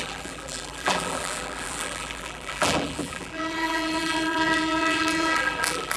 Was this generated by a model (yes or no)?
yes